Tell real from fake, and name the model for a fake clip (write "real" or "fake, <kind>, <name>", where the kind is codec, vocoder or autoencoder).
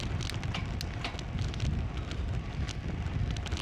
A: real